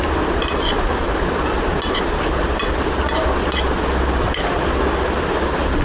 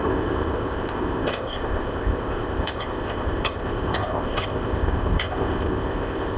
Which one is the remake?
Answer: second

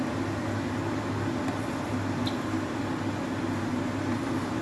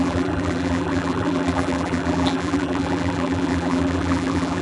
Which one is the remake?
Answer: second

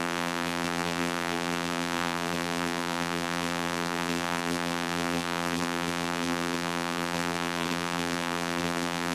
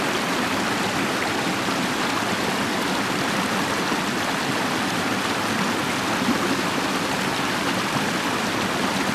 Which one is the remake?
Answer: first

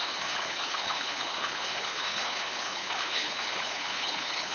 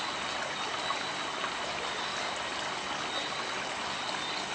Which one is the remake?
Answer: first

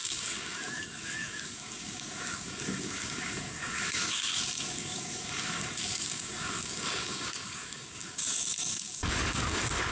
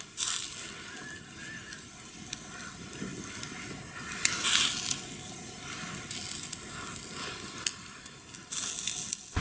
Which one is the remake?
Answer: first